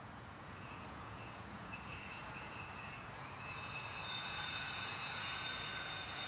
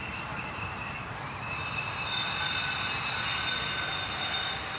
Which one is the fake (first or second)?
first